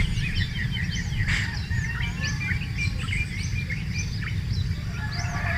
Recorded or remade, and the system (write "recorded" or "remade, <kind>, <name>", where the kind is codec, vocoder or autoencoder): recorded